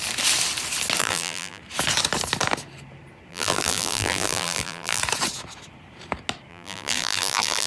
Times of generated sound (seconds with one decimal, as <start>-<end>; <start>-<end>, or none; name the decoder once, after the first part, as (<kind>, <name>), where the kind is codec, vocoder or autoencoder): 1.0-1.6 (vocoder, BigVGAN v2); 3.3-5.0; 6.5-7.7